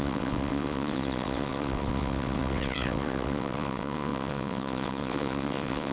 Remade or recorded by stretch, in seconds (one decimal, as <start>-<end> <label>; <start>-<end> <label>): 0.0-5.9 remade